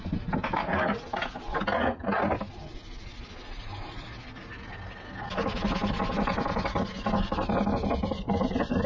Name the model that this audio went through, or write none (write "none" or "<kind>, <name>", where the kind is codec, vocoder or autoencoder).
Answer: none